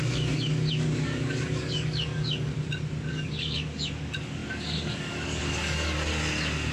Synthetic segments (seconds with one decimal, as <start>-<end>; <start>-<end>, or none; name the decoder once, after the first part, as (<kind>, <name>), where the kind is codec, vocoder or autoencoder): 0.0-2.5 (codec, DAC); 3.1-6.1